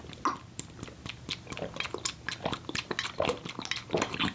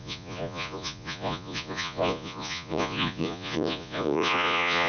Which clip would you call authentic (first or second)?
first